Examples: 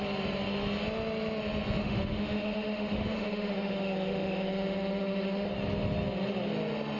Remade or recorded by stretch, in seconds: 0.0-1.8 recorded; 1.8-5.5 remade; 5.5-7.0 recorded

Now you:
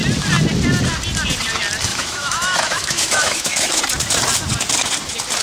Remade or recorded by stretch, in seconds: 0.0-1.9 recorded; 1.9-3.8 remade; 3.8-5.4 recorded

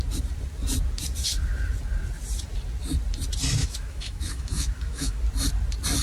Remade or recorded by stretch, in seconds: 0.0-3.6 recorded; 3.6-5.2 remade; 5.2-6.0 recorded

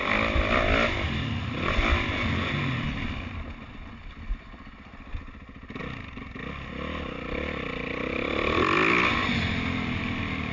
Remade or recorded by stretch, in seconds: 0.0-10.5 recorded